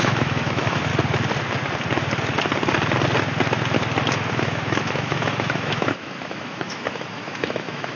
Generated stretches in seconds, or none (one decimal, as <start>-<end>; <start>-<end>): 0.0-0.9; 4.3-8.0